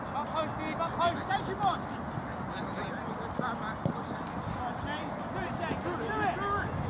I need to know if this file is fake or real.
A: real